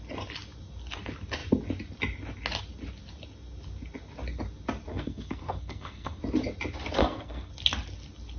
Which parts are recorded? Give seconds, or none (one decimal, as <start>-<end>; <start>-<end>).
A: 0.0-4.9; 6.2-7.0; 7.5-8.4